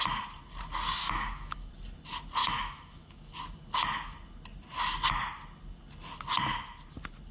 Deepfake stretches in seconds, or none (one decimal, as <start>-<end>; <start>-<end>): 1.0-1.7; 2.4-3.4